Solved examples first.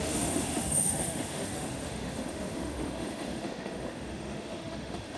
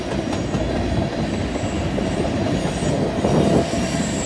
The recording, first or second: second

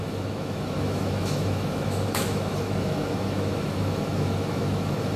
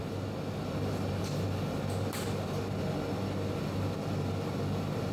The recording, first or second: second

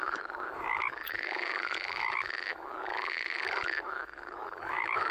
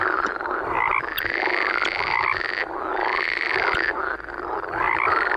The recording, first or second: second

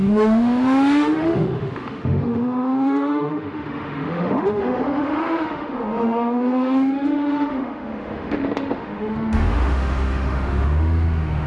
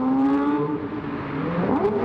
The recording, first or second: second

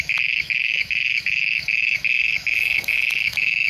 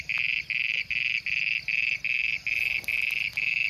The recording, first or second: second